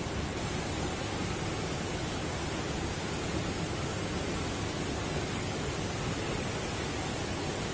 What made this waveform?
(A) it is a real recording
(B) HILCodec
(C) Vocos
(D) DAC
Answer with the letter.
A